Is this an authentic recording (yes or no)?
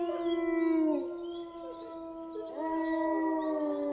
yes